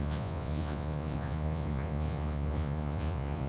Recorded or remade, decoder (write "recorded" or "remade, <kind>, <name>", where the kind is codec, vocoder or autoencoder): remade, vocoder, Vocos